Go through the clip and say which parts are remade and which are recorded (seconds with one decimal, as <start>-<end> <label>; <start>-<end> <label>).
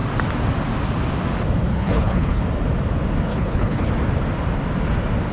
0.0-1.7 recorded; 1.7-2.4 remade; 2.4-3.3 recorded; 3.3-3.9 remade; 3.9-5.3 recorded